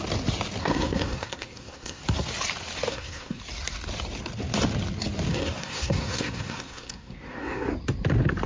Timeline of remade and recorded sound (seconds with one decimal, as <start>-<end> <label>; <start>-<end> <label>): 0.0-0.6 recorded; 0.6-2.0 remade; 2.0-2.9 recorded; 2.9-3.4 remade; 3.4-5.3 recorded; 5.3-7.7 remade; 7.7-8.5 recorded